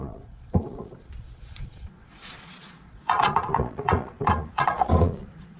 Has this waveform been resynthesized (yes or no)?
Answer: yes